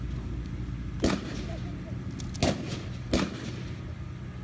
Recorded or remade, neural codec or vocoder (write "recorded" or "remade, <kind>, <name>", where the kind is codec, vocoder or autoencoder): recorded